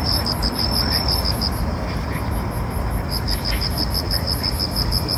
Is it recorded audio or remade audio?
recorded